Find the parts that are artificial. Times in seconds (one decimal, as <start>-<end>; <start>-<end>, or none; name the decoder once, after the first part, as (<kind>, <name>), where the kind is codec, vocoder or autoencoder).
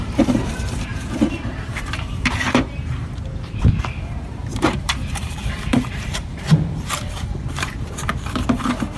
0.0-0.9 (vocoder, BigVGAN v2); 1.8-9.0